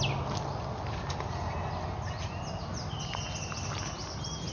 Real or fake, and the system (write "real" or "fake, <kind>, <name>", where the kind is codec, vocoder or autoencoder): real